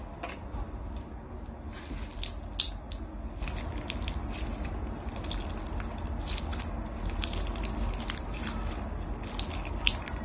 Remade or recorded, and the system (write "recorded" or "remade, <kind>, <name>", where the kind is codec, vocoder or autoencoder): recorded